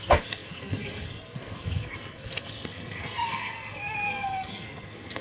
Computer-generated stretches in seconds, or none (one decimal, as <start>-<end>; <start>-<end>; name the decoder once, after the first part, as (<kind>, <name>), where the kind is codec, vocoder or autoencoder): 0.0-5.2 (codec, SNAC)